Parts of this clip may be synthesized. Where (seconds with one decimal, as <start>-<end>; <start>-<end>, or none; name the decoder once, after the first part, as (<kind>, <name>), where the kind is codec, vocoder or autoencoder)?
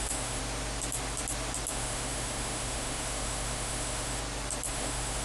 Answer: 0.0-0.4 (autoencoder, DAC-VAE); 1.7-4.2; 4.7-5.2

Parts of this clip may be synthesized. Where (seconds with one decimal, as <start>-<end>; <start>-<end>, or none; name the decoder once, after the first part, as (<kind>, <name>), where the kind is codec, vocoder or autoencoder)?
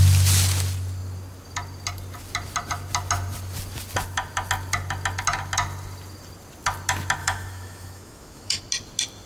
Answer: 7.2-8.6 (autoencoder, DAC-VAE)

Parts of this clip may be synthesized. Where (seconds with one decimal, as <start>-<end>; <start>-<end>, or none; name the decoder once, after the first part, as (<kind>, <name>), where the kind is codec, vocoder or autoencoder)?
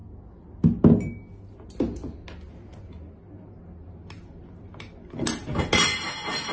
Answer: none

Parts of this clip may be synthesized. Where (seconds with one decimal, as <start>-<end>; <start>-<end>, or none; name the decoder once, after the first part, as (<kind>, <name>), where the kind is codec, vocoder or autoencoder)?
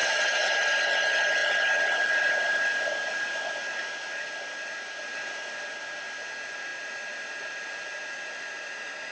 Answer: 0.0-0.5 (vocoder, WaveNeXt)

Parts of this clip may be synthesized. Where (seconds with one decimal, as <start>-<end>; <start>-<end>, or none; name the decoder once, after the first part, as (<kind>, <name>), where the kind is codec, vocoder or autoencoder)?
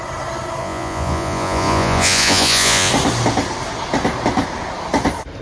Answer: 0.6-2.9 (vocoder, Vocos)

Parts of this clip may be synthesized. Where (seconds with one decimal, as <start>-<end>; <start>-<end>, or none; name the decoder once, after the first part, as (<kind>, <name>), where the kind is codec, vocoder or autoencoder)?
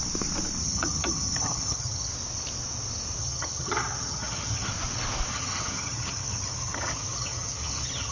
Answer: 0.6-2.1 (vocoder, HiFi-GAN); 3.2-4.7; 5.3-8.1